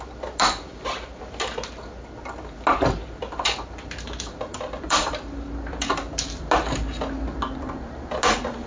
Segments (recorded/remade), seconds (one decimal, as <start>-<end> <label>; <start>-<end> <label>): 0.0-3.2 recorded; 3.2-6.5 remade; 6.5-8.7 recorded